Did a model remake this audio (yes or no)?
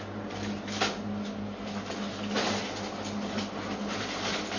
no